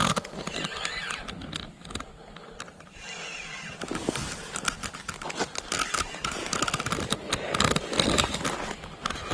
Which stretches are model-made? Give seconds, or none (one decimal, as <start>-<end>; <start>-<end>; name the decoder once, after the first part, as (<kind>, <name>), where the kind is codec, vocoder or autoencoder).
none